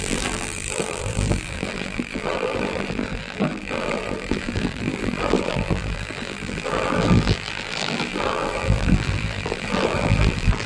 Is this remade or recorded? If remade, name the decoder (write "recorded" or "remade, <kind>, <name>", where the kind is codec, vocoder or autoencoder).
remade, vocoder, BigVGAN v2